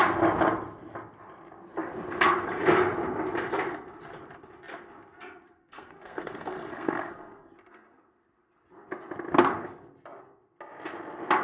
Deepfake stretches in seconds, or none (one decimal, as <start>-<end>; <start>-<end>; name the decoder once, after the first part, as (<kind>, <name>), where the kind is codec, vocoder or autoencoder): 5.6-7.5 (codec, SNAC)

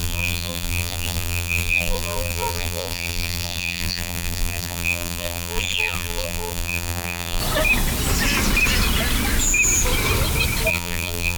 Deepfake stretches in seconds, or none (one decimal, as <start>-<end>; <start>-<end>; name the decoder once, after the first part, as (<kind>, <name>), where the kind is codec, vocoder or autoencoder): 0.0-7.4 (vocoder, BigVGAN v2); 10.7-11.4